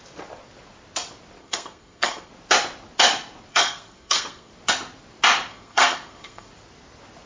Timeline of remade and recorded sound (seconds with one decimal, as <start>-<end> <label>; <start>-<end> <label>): 0.0-1.4 recorded; 1.4-2.3 remade; 2.3-3.5 recorded; 3.5-4.5 remade; 4.5-5.5 recorded; 5.5-6.5 remade; 6.5-7.3 recorded